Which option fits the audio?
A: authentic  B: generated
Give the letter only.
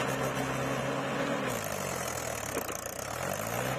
A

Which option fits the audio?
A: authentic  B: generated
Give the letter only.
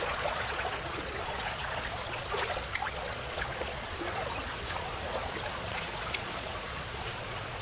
B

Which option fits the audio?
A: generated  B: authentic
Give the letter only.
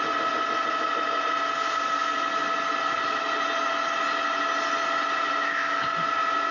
B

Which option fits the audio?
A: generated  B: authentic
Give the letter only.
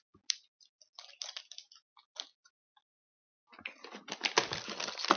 B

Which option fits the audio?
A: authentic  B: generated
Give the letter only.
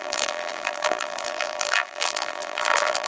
B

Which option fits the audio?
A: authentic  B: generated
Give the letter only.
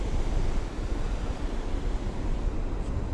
A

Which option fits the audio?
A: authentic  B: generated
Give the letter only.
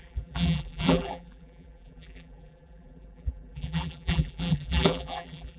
B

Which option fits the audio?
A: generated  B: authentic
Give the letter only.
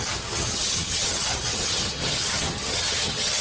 A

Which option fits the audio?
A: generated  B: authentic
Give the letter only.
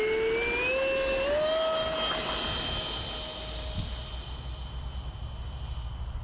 B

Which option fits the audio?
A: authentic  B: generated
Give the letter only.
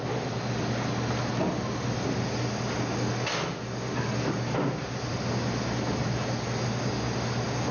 A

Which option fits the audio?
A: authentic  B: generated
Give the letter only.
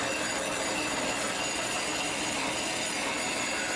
A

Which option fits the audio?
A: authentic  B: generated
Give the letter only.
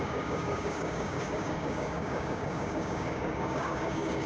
B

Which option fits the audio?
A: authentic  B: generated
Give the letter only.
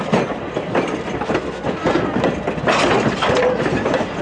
A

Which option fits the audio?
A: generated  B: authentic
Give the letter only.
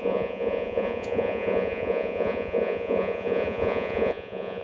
A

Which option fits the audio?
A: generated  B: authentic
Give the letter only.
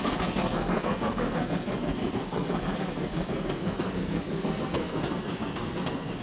A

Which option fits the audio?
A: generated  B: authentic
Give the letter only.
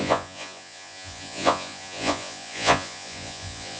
A